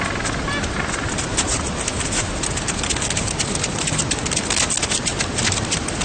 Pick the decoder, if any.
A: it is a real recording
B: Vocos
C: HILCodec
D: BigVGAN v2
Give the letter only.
A